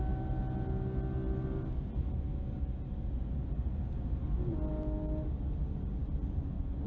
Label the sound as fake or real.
real